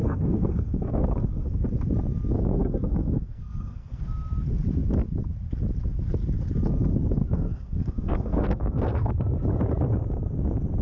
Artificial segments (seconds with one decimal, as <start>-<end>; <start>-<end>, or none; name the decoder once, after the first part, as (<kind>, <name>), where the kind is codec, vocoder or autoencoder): 0.0-1.6 (codec, SNAC); 2.5-4.0; 7.2-9.1